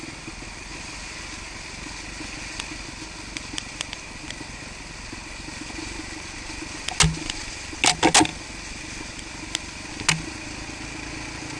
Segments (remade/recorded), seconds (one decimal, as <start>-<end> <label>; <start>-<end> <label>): 0.0-11.6 recorded